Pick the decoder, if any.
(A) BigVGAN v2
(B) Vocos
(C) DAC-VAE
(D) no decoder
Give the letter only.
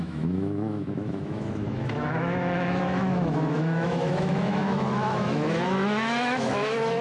C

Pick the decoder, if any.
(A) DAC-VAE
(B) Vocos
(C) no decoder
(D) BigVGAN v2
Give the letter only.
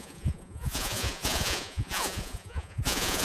B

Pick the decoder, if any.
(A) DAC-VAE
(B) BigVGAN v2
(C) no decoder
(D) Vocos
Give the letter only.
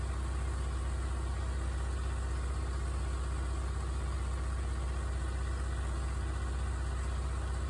C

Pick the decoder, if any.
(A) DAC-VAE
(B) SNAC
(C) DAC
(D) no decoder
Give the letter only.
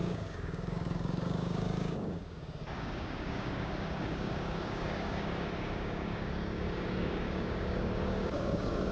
C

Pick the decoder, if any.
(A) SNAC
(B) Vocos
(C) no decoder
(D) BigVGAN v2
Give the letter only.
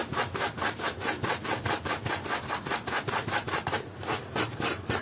D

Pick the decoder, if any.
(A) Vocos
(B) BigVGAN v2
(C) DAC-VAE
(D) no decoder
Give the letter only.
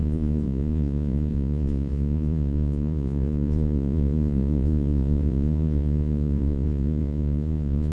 A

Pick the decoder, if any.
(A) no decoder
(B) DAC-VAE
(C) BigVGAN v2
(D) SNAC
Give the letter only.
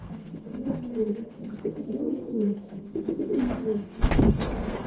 D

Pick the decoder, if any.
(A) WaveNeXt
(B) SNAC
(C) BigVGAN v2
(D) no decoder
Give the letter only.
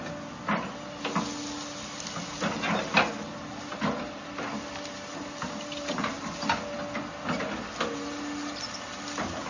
D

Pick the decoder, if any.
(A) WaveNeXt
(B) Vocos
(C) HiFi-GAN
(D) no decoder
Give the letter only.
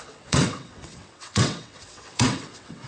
A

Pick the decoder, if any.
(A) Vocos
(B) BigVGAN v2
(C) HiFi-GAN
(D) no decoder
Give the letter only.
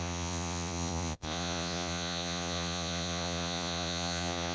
A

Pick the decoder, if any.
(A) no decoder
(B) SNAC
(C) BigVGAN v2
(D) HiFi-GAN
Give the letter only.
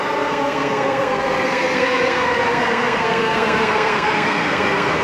B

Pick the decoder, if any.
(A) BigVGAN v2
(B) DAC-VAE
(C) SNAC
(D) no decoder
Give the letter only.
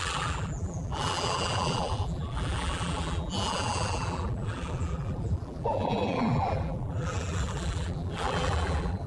A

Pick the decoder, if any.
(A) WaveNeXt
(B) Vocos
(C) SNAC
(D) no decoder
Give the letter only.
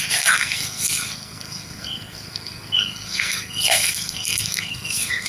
C